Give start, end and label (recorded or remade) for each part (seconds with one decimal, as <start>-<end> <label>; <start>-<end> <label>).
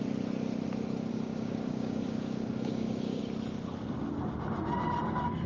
0.0-1.1 recorded; 1.1-3.2 remade; 3.2-5.5 recorded